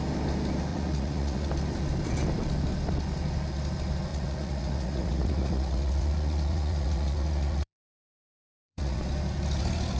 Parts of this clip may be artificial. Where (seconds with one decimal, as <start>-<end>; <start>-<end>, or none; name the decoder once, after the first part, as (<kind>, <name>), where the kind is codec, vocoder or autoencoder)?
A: 0.7-1.5 (vocoder, Vocos); 4.1-9.0